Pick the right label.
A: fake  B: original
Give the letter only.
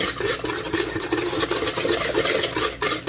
B